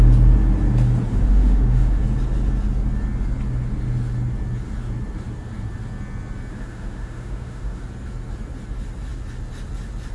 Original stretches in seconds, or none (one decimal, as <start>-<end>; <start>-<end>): 0.0-1.1; 2.0-6.5; 7.8-10.1